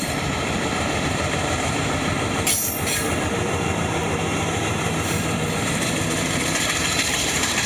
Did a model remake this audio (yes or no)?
yes